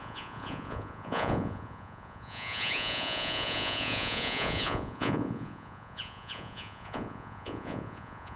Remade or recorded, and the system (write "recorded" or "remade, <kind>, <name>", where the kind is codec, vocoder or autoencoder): remade, vocoder, Vocos